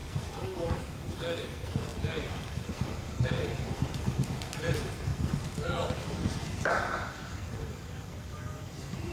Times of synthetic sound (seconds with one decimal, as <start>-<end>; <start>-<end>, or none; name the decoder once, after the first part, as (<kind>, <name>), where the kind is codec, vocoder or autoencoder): 0.0-9.1 (codec, SNAC)